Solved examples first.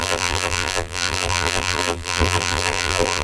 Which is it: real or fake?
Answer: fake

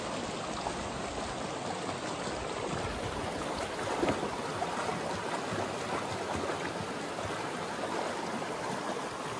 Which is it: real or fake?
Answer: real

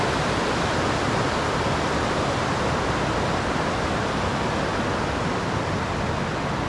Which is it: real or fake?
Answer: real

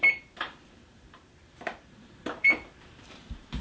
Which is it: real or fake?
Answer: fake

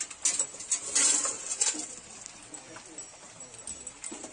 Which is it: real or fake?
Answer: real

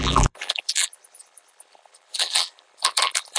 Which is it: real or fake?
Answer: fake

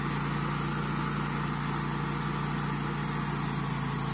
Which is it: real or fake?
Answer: real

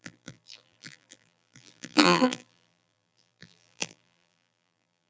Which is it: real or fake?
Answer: fake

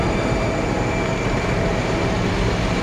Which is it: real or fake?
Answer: fake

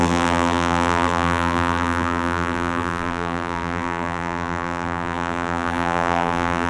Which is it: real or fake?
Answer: fake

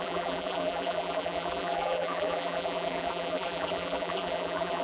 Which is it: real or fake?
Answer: fake